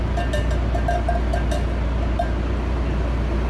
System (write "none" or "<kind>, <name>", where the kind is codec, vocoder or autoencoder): none